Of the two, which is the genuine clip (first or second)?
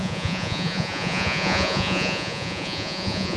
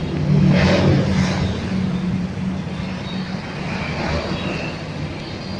second